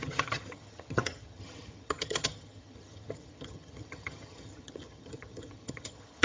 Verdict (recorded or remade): remade